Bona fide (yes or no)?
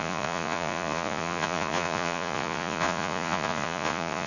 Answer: no